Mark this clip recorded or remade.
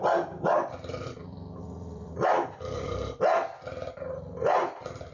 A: remade